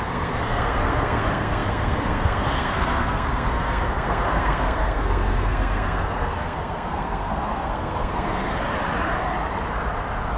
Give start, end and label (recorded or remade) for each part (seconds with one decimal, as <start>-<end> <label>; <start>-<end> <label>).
0.0-8.4 remade; 8.4-10.4 recorded